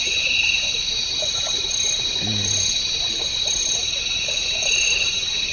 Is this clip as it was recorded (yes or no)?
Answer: yes